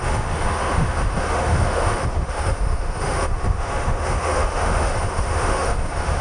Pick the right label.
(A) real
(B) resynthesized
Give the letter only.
B